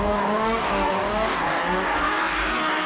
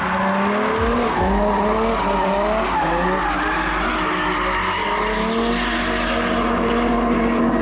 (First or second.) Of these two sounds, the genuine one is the second